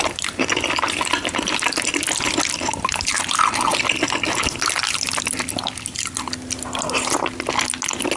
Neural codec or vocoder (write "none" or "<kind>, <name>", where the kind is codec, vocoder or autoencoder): none